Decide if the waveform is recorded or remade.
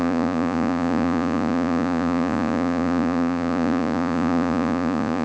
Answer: remade